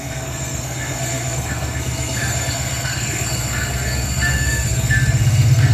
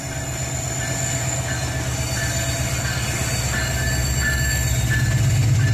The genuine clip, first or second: second